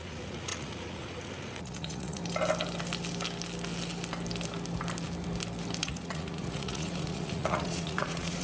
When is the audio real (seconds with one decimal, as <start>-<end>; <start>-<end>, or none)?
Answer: 2.2-5.8